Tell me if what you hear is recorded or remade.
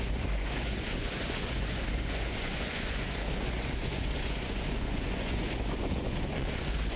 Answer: remade